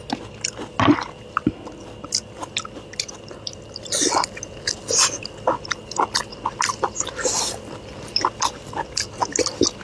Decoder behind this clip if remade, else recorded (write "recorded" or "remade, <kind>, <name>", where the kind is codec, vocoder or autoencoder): recorded